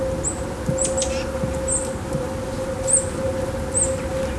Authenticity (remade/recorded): recorded